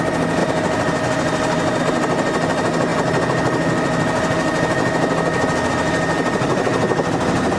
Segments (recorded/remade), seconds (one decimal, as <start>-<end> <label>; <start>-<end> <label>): 0.0-7.6 recorded